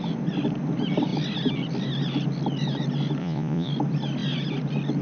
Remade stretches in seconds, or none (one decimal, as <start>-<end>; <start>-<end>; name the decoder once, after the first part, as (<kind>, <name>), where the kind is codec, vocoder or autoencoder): 3.2-3.7 (vocoder, Vocos)